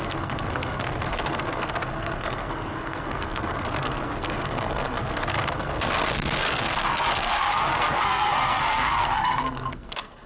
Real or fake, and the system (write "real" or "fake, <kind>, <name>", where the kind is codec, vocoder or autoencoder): fake, codec, SNAC